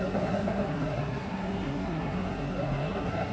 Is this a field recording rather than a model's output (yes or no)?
no